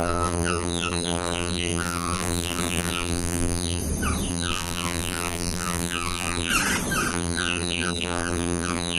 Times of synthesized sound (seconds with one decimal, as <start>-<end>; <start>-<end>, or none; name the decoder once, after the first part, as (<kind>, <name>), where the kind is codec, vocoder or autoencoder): 0.0-3.8 (vocoder, BigVGAN v2); 4.3-6.5; 7.1-9.0